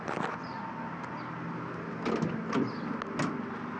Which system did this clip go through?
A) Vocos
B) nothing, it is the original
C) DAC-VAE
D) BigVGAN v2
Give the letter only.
B